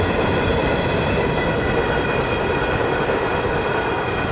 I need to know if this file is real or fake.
real